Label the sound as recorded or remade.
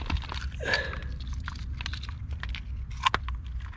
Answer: recorded